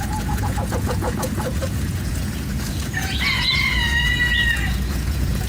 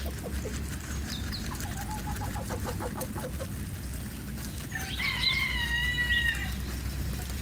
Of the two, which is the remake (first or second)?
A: first